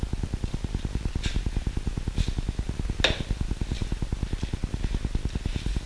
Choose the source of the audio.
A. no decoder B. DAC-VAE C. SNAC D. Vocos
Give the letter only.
A